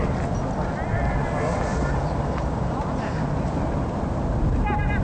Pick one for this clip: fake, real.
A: real